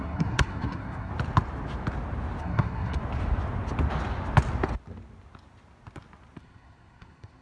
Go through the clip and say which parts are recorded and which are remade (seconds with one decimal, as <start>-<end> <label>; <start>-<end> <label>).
0.0-1.1 remade; 1.1-2.4 recorded; 2.4-3.0 remade; 3.0-6.4 recorded; 6.4-7.4 remade